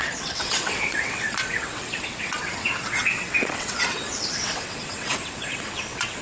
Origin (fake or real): fake